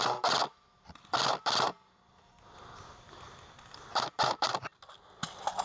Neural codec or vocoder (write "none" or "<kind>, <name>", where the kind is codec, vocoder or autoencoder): vocoder, BigVGAN v2